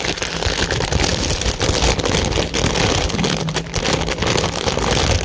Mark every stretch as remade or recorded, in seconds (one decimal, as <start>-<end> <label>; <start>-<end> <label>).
0.0-5.2 recorded